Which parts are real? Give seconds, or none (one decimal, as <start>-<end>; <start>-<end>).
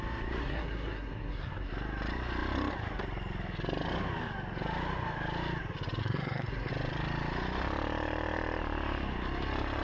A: 0.0-0.4; 1.7-6.0; 6.7-9.8